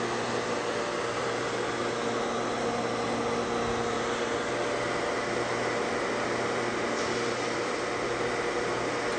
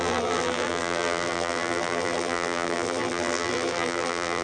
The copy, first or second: second